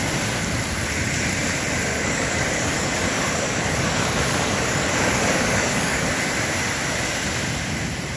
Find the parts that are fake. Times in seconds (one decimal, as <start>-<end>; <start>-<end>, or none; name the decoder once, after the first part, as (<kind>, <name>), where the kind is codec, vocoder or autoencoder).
1.9-6.1 (codec, DAC)